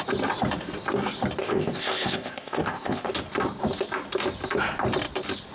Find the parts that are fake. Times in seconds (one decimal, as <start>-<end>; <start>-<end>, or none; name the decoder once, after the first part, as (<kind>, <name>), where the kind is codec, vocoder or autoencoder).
1.4-3.1 (codec, ZipCodec)